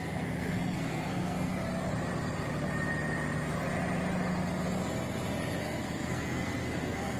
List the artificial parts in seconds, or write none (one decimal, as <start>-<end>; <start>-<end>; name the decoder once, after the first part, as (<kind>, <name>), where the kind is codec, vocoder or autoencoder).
0.0-1.7 (codec, SNAC); 5.6-7.2